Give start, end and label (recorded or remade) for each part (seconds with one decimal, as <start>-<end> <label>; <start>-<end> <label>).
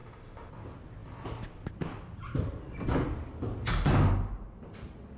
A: 0.0-0.5 remade; 0.5-5.2 recorded